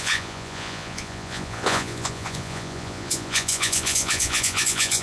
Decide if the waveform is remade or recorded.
remade